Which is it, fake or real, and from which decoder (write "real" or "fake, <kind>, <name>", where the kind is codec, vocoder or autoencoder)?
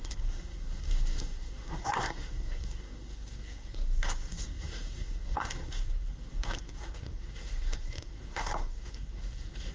fake, codec, SNAC